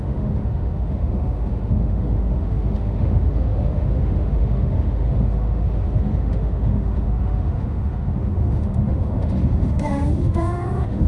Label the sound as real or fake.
fake